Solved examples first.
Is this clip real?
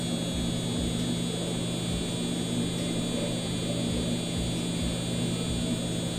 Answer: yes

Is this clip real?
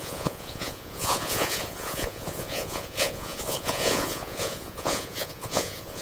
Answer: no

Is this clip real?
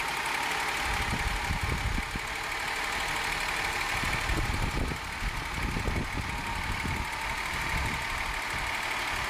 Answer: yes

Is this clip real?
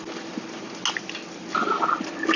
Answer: yes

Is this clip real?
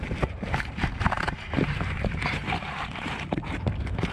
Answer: no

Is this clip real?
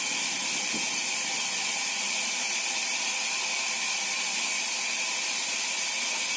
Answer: no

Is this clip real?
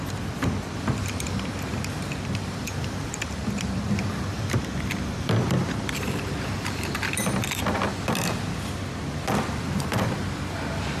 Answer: no